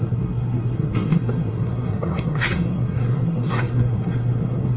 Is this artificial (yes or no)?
yes